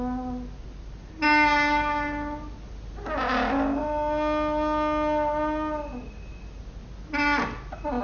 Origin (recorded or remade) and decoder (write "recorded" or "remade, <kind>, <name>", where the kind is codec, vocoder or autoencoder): recorded